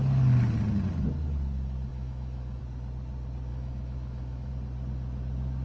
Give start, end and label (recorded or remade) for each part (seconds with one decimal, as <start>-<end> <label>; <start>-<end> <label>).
0.0-1.9 recorded; 1.9-2.6 remade; 2.6-3.5 recorded; 3.5-4.5 remade; 4.5-5.6 recorded

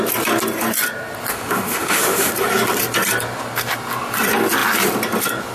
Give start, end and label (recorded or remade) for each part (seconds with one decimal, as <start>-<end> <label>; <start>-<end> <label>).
0.0-1.3 recorded; 1.3-2.3 remade; 2.3-5.5 recorded

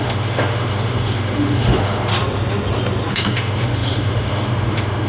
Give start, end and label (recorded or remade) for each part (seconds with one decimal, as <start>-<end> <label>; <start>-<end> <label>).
0.0-2.1 remade; 2.1-3.1 recorded; 3.1-5.1 remade

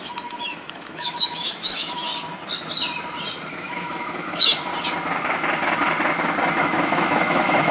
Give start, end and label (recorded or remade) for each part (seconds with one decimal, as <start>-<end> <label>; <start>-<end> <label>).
0.0-2.1 remade; 2.1-3.5 recorded; 3.5-4.7 remade; 4.7-6.6 recorded; 6.6-7.7 remade

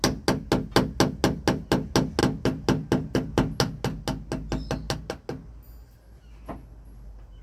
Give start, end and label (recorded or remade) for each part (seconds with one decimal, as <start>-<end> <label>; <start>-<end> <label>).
0.0-7.4 recorded

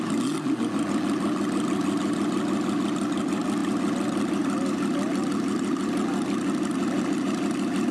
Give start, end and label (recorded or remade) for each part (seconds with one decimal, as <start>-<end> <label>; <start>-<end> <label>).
0.0-7.9 recorded